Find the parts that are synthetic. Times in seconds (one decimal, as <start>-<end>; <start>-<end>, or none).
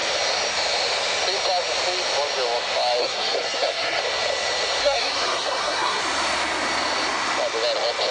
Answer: 3.0-4.0; 4.8-6.0